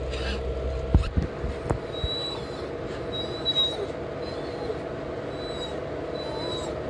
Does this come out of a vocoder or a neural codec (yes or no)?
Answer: no